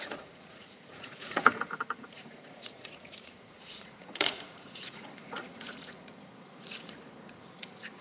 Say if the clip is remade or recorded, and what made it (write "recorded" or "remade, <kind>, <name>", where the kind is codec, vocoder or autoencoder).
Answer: remade, vocoder, Vocos